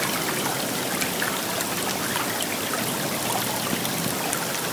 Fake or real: real